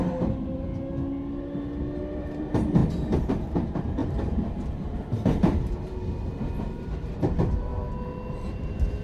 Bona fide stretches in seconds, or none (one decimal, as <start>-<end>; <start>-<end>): 0.7-2.0; 2.8-3.3; 7.7-8.3